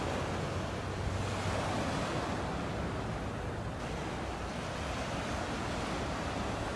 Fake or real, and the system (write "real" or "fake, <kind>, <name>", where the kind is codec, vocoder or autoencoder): real